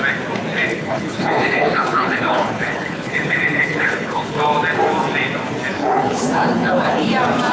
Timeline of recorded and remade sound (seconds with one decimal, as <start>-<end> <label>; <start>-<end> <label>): 0.0-0.7 recorded; 0.7-4.4 remade; 4.4-5.8 recorded; 5.8-7.1 remade; 7.1-7.5 recorded